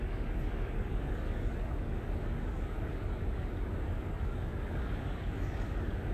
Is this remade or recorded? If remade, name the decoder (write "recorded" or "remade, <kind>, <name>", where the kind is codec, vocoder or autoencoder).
remade, codec, DAC